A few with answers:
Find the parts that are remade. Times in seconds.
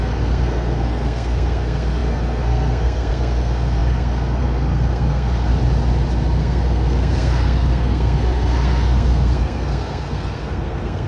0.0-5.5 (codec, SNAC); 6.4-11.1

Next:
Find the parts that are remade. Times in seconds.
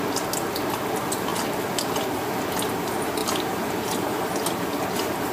3.2-4.3 (vocoder, BigVGAN v2)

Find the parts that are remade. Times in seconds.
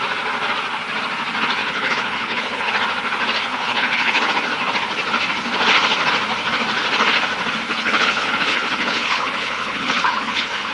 1.6-2.7 (codec, HILCodec); 3.5-4.3; 7.7-10.7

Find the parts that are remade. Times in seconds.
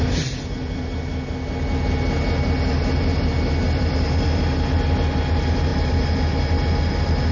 none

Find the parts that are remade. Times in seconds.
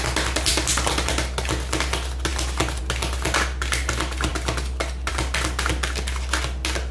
none